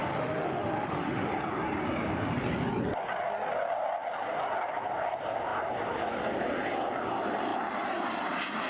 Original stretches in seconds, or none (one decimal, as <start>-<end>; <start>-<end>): 1.3-8.7

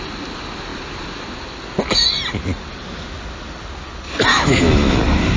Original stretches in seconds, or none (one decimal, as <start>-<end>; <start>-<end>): 0.0-4.3; 5.0-5.4

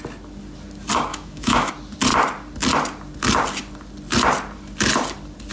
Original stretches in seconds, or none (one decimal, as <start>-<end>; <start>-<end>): 0.0-1.1; 1.7-5.5

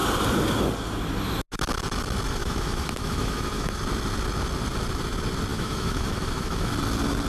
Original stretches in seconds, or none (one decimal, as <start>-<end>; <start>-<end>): 0.0-2.4; 3.8-5.5; 6.7-7.3

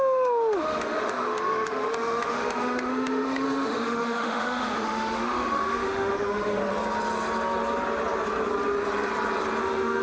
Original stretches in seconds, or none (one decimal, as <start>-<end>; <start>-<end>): 6.6-9.6

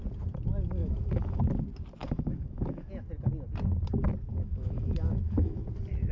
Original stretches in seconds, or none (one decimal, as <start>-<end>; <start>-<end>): 0.0-0.8; 1.4-2.0; 2.9-4.3; 5.6-6.1

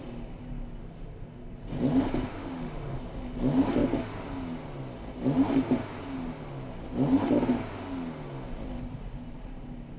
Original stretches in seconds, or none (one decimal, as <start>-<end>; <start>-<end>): 0.0-0.8; 1.5-2.3; 3.0-10.0